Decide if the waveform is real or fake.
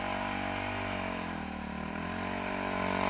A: real